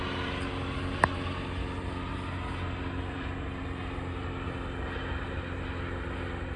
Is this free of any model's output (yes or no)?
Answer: yes